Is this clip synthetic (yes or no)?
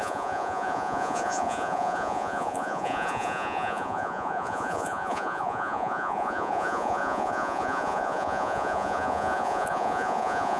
yes